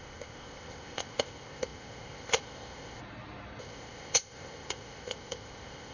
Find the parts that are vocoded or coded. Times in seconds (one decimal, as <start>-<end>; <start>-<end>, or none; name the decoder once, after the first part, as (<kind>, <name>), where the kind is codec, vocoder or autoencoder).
0.0-3.0 (codec, ZipCodec); 3.6-5.9